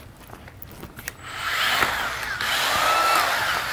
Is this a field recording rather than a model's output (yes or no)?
yes